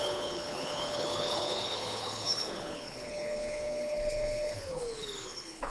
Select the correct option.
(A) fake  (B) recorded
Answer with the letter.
A